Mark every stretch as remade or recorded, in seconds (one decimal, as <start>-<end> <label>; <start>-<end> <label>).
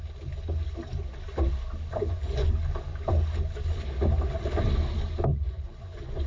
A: 0.0-1.9 recorded; 1.9-2.5 remade; 2.5-5.3 recorded; 5.3-6.3 remade